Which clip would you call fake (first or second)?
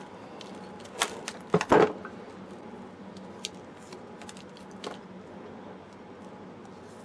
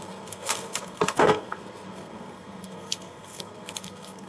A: second